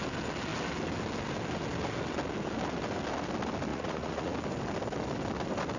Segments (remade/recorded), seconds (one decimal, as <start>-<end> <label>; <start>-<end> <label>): 0.0-3.7 recorded; 3.7-4.3 remade; 4.3-5.8 recorded